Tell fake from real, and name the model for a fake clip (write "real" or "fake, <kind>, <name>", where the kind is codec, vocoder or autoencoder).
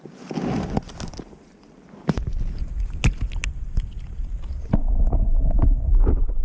real